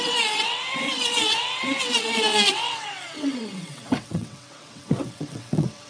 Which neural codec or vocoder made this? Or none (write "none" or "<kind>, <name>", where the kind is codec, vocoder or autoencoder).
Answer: vocoder, WaveNeXt